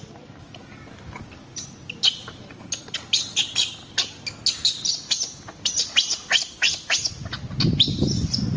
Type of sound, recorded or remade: recorded